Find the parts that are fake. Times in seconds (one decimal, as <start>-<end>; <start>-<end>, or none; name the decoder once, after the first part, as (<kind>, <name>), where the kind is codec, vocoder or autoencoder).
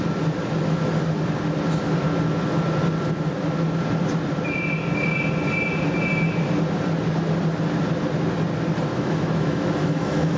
8.9-10.4 (autoencoder, DAC-VAE)